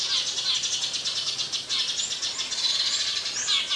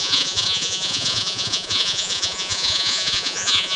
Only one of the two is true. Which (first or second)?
first